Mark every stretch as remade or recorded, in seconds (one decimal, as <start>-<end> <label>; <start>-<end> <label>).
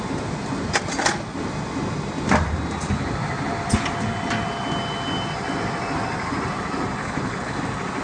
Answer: 0.0-7.0 recorded; 7.0-7.6 remade; 7.6-8.0 recorded